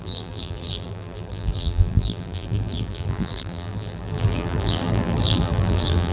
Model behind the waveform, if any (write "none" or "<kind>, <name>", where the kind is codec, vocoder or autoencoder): vocoder, BigVGAN v2